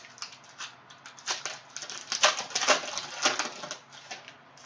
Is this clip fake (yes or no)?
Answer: no